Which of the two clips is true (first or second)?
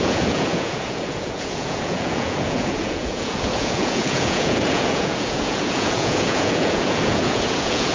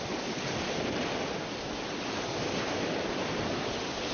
second